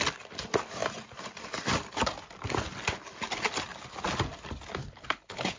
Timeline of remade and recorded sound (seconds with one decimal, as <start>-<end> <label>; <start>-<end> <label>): 0.0-4.8 recorded; 4.8-5.6 remade